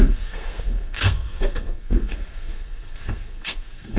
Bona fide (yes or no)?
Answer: no